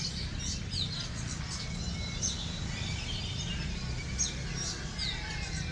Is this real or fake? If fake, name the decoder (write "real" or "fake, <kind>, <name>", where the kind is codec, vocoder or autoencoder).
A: real